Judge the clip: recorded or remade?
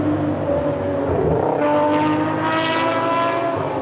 recorded